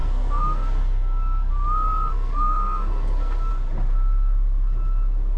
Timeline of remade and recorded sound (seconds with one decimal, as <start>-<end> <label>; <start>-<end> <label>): 0.0-1.5 remade; 1.5-2.1 recorded; 2.1-3.5 remade; 3.5-5.4 recorded